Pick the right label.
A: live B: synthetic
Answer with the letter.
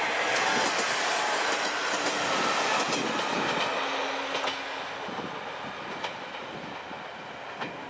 A